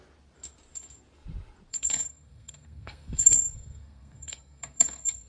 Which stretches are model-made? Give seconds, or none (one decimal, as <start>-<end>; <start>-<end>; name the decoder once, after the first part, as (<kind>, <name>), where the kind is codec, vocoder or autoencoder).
1.7-5.3 (codec, SNAC)